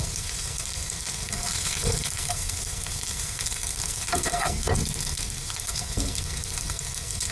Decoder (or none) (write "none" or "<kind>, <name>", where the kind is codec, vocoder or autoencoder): codec, SNAC